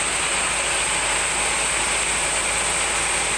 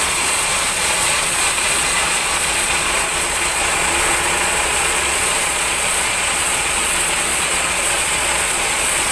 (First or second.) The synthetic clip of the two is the second